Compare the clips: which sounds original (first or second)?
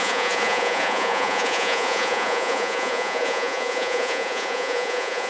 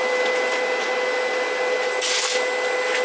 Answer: second